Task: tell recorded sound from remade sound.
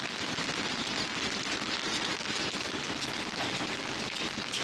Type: recorded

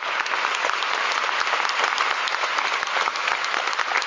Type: recorded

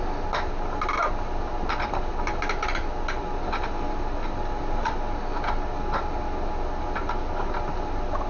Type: recorded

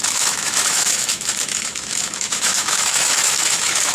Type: remade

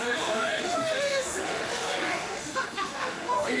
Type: remade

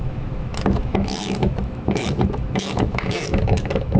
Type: remade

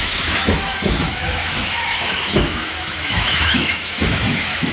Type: remade